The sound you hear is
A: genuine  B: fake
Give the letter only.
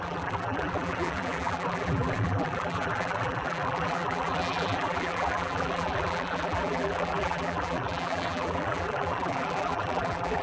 B